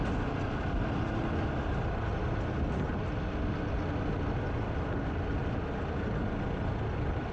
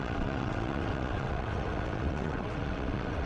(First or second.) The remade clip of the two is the second